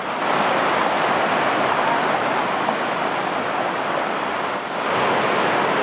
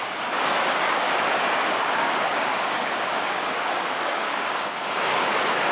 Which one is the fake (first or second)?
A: second